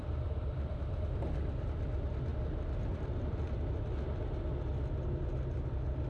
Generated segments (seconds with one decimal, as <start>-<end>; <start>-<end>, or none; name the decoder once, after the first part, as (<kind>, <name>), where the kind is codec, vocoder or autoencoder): 0.0-2.3 (vocoder, BigVGAN v2)